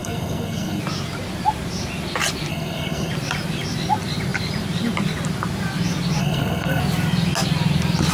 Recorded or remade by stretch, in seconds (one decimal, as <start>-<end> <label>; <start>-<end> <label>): 0.0-0.8 remade; 0.8-2.5 recorded; 2.5-3.1 remade; 3.1-6.2 recorded; 6.2-6.8 remade; 6.8-8.1 recorded